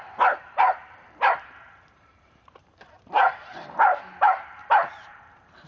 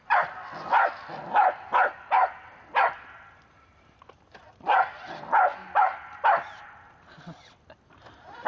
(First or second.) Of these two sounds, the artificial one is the first